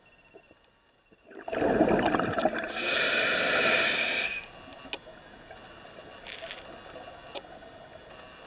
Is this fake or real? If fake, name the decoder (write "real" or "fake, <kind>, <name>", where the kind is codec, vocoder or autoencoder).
real